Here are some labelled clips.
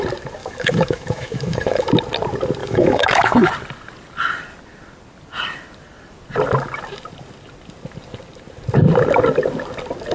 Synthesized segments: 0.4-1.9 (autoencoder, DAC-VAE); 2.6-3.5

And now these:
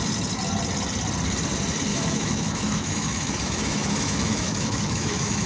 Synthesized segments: 1.9-5.5 (autoencoder, DAC-VAE)

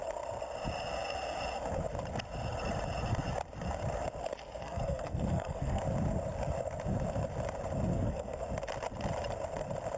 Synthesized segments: 4.6-5.8 (codec, SNAC); 7.9-8.4

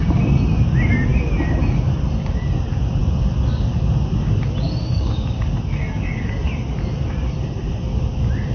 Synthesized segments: 4.8-5.4 (codec, DAC)

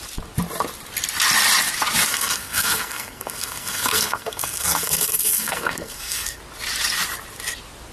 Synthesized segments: 2.1-6.4 (codec, SNAC)

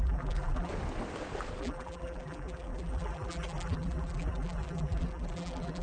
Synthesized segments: 0.0-0.7 (vocoder, BigVGAN v2); 1.6-5.8

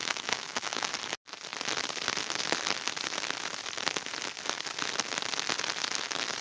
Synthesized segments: 0.0-0.9 (autoencoder, DAC-VAE)